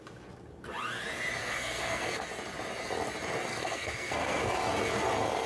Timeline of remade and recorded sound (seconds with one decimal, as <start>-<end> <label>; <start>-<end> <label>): 0.0-1.4 recorded; 1.4-2.2 remade; 2.2-3.5 recorded; 3.5-4.5 remade; 4.5-5.5 recorded

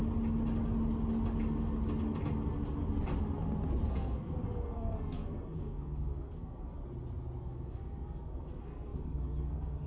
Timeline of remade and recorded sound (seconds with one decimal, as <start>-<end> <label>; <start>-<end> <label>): 0.0-3.9 recorded; 3.9-6.8 remade; 6.8-7.4 recorded; 7.4-9.9 remade

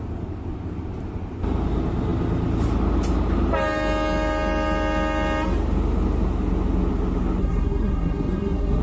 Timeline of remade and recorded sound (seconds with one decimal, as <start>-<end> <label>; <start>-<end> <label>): 0.0-7.4 recorded; 7.4-8.8 remade

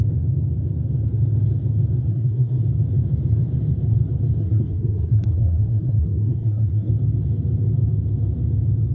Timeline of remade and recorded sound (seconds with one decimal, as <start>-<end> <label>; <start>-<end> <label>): 0.0-2.1 recorded; 2.1-2.6 remade; 2.6-4.4 recorded; 4.4-6.9 remade; 6.9-8.9 recorded